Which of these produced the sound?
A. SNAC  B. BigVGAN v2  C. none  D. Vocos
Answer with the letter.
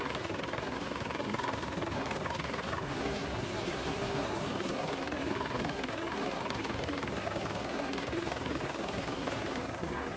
A